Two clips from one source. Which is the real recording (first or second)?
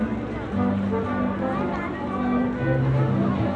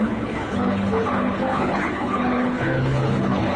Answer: first